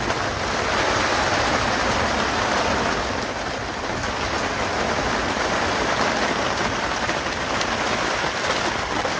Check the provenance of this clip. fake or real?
real